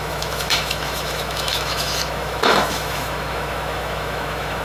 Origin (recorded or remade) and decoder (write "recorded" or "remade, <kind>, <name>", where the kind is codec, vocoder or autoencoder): remade, autoencoder, DAC-VAE